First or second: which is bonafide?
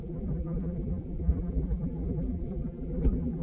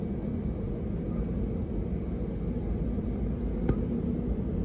second